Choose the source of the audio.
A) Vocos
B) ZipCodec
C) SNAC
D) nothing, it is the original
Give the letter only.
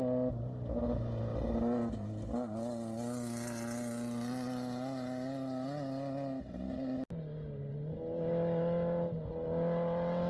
D